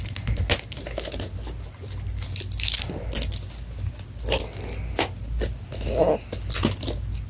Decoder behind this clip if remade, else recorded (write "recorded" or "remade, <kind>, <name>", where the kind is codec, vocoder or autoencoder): recorded